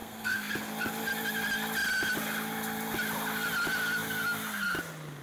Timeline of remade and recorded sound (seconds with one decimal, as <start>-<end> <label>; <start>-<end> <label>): 0.0-0.5 remade; 0.5-5.2 recorded